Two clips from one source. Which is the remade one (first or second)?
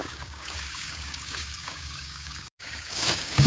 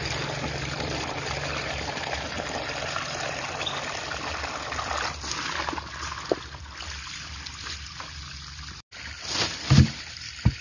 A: first